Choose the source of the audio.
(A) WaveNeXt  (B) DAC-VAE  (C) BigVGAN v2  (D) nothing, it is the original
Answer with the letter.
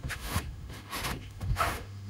B